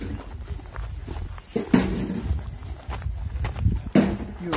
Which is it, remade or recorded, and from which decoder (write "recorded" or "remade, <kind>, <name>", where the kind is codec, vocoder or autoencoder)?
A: recorded